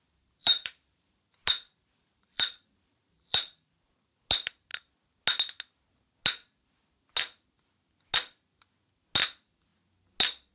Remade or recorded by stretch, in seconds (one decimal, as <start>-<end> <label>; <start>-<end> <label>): 0.0-0.4 recorded; 0.4-1.2 remade; 1.2-2.0 recorded; 2.0-3.7 remade; 3.7-10.5 recorded